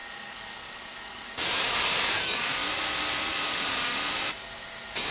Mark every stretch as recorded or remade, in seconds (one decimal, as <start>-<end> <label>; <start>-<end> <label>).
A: 0.0-2.6 remade; 2.6-4.6 recorded; 4.6-5.1 remade